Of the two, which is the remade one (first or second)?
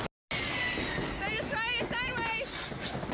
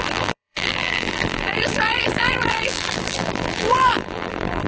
second